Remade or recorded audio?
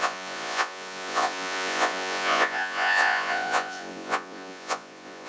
remade